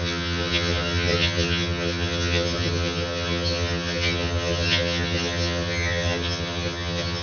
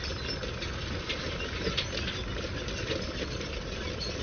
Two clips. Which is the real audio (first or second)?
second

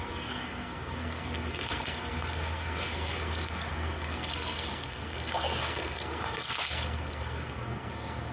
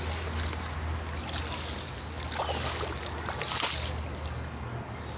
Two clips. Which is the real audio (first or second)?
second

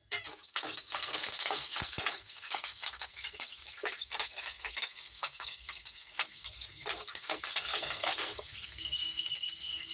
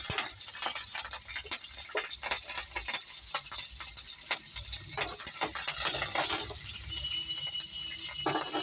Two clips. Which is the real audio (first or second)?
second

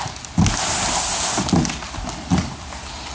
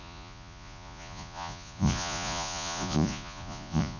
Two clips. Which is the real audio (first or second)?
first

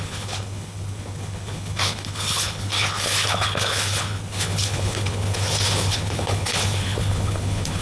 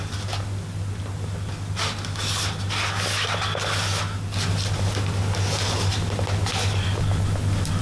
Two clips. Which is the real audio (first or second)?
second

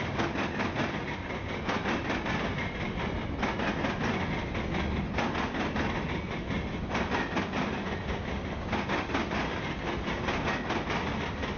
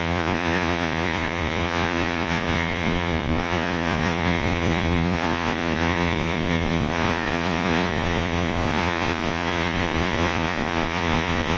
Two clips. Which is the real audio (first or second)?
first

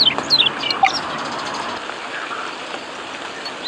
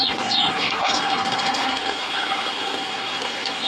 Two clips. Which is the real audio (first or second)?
first